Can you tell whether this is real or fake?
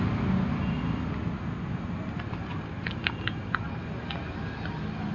real